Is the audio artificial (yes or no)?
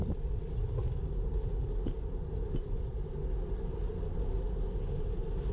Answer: no